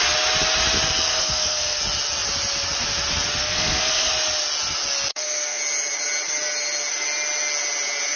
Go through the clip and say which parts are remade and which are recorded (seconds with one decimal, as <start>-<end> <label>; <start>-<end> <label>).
0.0-1.1 recorded; 1.1-1.8 remade; 1.8-3.4 recorded; 3.4-4.1 remade; 4.1-5.1 recorded; 5.1-5.6 remade; 5.6-8.2 recorded